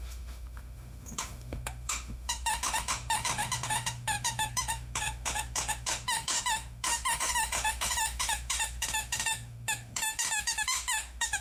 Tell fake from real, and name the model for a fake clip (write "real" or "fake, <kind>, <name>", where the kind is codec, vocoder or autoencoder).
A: fake, autoencoder, DAC-VAE